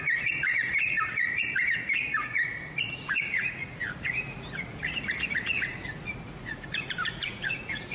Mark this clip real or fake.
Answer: fake